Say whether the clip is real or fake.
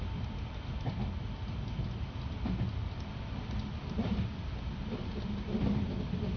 real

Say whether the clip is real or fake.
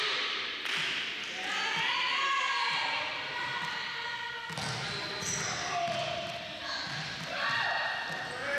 real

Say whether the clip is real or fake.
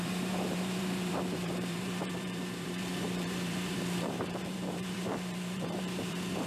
fake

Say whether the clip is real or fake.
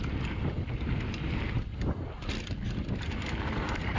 real